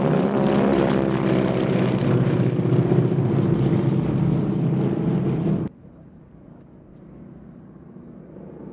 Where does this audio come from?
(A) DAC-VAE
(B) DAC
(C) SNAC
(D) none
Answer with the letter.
D